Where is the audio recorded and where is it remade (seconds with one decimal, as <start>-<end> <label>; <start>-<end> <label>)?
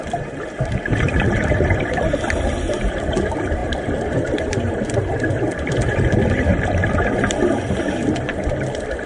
0.0-1.1 recorded; 1.1-2.1 remade; 2.1-9.1 recorded